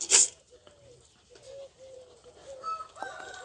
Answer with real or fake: real